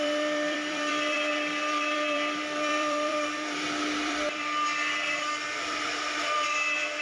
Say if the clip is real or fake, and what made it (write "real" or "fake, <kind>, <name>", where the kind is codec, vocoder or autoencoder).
fake, vocoder, BigVGAN v2